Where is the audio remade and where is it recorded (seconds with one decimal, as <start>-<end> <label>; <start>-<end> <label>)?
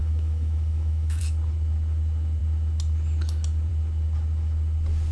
0.0-1.2 remade; 1.2-5.1 recorded